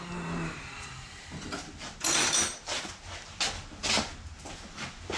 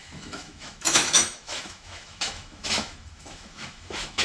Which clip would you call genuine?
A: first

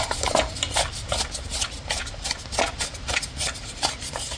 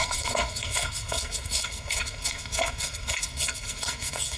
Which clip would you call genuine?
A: first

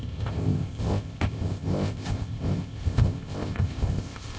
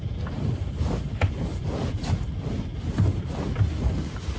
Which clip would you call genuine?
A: second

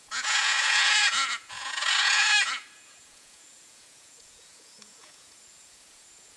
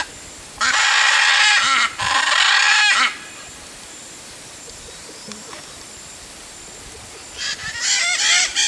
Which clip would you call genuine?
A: second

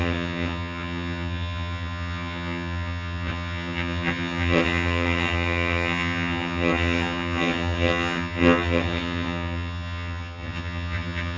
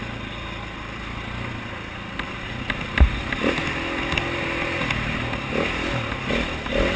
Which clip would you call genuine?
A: second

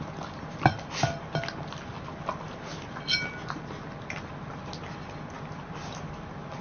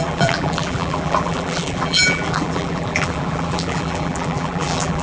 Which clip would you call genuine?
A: first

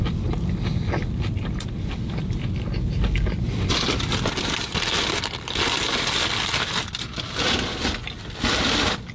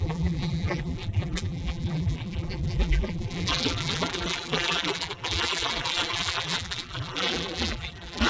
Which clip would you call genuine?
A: first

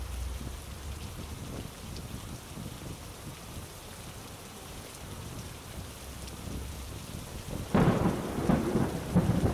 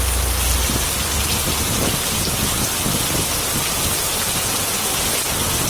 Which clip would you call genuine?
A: second